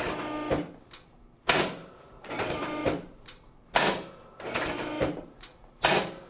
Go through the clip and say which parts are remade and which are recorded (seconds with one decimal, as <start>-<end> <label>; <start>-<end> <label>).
0.0-1.8 recorded; 1.8-5.6 remade; 5.6-6.3 recorded